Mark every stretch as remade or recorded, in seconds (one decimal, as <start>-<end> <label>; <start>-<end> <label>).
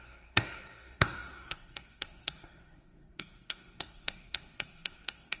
0.0-5.4 remade